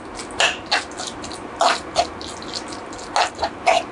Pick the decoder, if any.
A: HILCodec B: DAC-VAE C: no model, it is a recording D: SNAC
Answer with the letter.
C